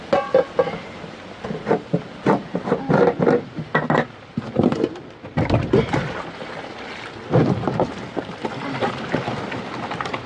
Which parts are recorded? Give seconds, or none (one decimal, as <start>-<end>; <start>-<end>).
0.0-10.3

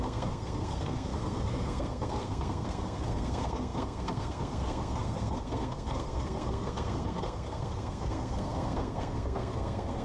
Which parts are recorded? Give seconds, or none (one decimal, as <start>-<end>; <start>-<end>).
none

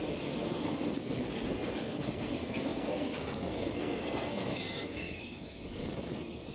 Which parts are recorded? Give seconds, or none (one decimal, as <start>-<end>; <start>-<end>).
none

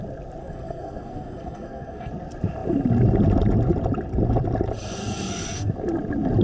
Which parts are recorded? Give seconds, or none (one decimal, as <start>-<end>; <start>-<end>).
0.0-0.4; 2.1-5.0; 5.7-6.4

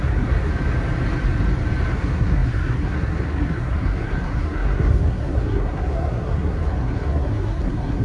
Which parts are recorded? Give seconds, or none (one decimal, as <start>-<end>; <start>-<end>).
0.5-1.9

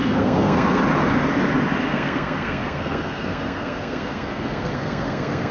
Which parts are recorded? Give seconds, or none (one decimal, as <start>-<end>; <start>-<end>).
0.8-1.9

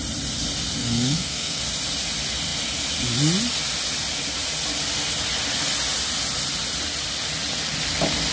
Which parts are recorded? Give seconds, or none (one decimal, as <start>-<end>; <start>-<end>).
0.0-0.8; 1.6-8.3

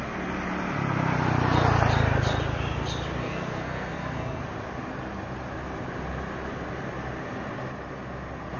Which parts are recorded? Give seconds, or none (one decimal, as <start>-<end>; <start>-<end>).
0.0-3.2; 4.4-8.6